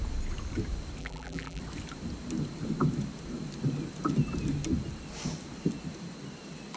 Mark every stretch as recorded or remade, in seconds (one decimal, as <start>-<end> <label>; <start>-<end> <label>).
0.0-1.0 recorded; 1.0-1.6 remade; 1.6-6.8 recorded